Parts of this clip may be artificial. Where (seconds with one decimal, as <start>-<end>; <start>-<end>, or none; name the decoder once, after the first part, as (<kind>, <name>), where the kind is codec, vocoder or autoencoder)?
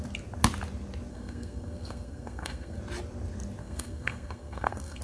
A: 1.1-2.8 (codec, SNAC); 3.6-5.0